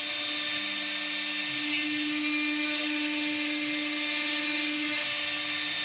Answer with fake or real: real